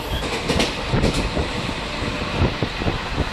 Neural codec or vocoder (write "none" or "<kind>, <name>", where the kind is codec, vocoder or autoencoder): none